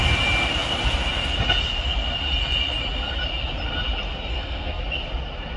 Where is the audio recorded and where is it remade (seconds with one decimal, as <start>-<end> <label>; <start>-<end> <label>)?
0.0-4.3 recorded; 4.3-4.8 remade; 4.8-5.6 recorded